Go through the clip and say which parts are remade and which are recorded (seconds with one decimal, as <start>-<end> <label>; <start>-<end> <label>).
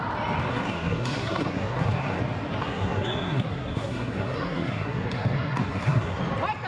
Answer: 0.0-0.5 recorded; 0.5-2.2 remade; 2.2-2.6 recorded; 2.6-6.2 remade; 6.2-6.7 recorded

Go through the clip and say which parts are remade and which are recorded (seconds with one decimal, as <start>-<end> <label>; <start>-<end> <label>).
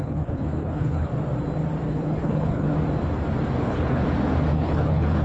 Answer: 0.0-1.1 remade; 1.1-1.9 recorded; 1.9-2.7 remade; 2.7-3.6 recorded; 3.6-4.0 remade; 4.0-4.5 recorded; 4.5-5.2 remade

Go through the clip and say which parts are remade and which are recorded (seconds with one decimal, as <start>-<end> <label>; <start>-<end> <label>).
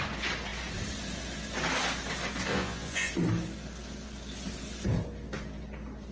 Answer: 0.0-2.5 recorded; 2.5-3.1 remade; 3.1-6.1 recorded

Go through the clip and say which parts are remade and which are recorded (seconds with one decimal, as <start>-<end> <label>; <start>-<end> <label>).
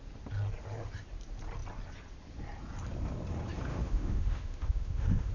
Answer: 0.0-3.7 recorded; 3.7-5.3 remade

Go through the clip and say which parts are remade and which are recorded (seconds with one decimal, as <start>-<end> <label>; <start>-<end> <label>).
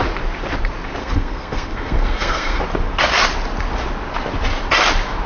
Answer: 0.0-1.0 recorded; 1.0-2.6 remade; 2.6-5.3 recorded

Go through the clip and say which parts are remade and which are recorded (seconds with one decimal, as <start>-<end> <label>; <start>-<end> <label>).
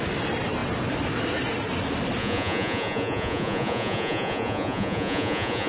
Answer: 0.0-2.2 recorded; 2.2-5.7 remade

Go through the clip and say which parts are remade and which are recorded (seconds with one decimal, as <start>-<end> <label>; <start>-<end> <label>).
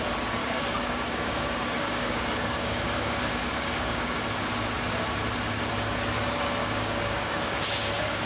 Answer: 0.0-0.4 recorded; 0.4-4.5 remade; 4.5-6.6 recorded; 6.6-7.9 remade; 7.9-8.3 recorded